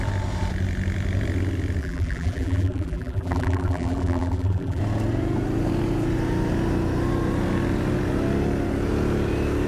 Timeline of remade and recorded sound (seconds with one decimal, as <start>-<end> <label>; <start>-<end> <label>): 0.0-1.8 recorded; 1.8-4.8 remade; 4.8-9.7 recorded